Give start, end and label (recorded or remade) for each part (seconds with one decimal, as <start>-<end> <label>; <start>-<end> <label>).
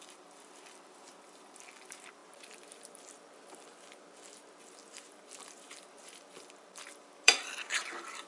0.0-2.2 remade; 2.2-4.6 recorded; 4.6-8.3 remade